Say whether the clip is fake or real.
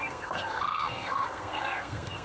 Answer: fake